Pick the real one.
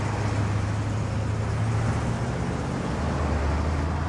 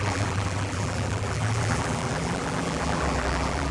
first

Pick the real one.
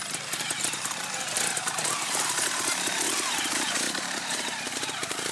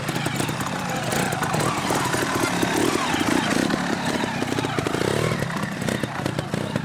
second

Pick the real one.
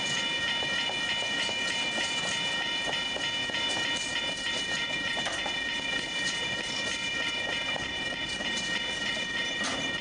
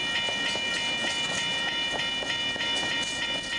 second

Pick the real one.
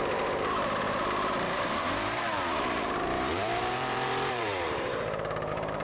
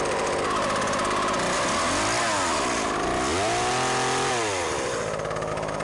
second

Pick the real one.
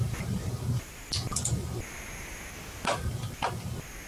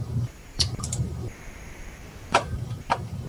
first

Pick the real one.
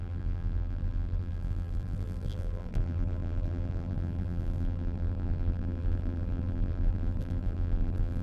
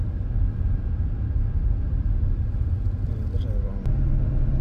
second